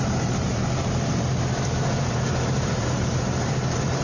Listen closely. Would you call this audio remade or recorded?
remade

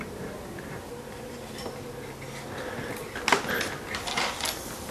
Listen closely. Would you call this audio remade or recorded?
recorded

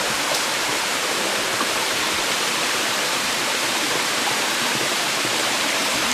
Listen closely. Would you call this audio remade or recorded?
remade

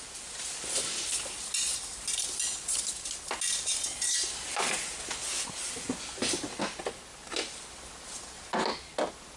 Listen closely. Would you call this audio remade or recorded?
recorded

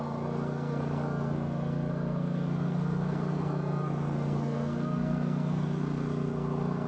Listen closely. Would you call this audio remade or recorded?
remade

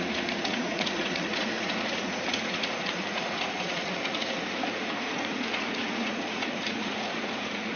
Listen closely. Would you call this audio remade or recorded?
remade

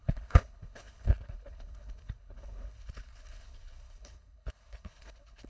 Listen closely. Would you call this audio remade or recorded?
remade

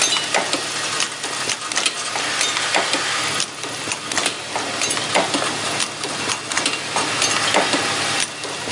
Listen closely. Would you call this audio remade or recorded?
recorded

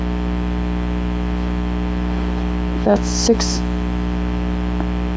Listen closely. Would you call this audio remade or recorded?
recorded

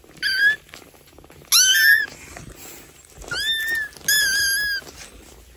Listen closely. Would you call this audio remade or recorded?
recorded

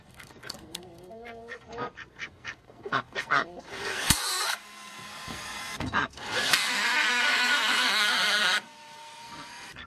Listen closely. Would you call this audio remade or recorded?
remade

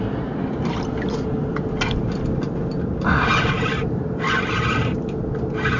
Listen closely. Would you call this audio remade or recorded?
recorded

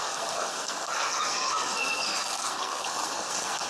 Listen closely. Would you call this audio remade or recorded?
remade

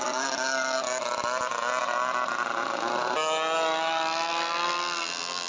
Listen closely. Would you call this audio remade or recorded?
recorded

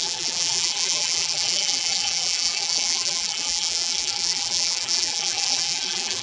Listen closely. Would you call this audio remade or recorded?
remade